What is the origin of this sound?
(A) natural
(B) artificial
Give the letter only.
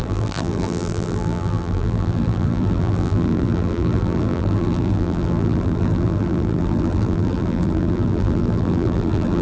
B